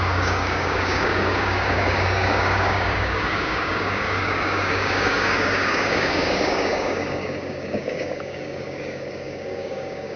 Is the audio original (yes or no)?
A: no